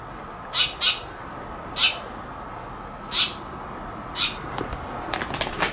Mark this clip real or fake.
real